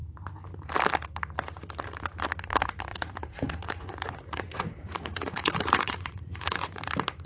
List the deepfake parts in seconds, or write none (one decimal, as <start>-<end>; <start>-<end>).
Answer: 2.9-6.8